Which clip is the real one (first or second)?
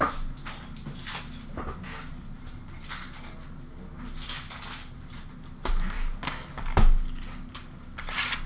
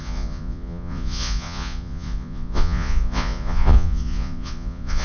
first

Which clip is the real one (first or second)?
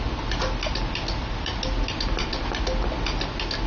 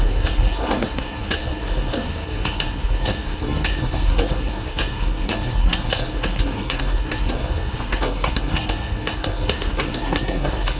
first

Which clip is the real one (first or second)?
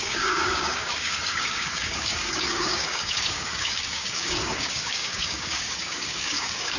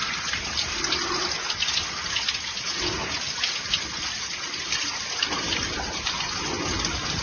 second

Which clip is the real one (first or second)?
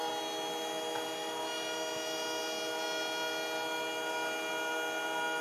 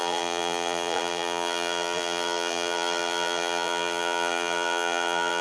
first